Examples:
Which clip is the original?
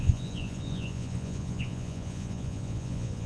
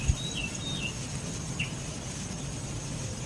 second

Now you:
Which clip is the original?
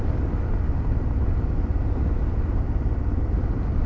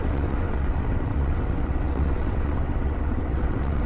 first